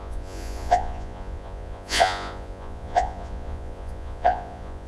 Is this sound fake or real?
fake